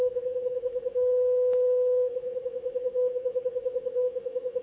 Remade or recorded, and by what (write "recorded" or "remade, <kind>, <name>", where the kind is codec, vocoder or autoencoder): remade, autoencoder, DAC-VAE